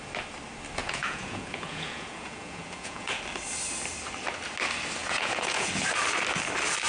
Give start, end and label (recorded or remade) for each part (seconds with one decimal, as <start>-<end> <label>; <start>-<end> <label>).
0.0-0.8 recorded; 0.8-3.2 remade; 3.2-5.0 recorded; 5.0-5.7 remade; 5.7-6.9 recorded